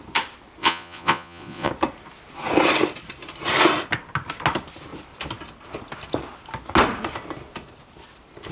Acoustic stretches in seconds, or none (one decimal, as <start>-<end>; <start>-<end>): 0.0-0.6; 1.7-8.5